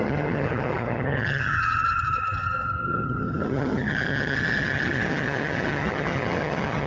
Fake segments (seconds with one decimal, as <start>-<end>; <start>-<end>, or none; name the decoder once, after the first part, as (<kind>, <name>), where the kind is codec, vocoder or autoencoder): 0.0-6.9 (vocoder, HiFi-GAN)